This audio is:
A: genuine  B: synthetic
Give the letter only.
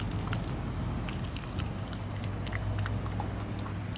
A